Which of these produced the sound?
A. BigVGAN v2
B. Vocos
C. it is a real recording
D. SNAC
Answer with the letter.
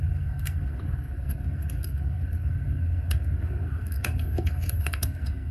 D